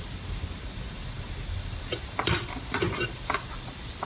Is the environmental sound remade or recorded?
remade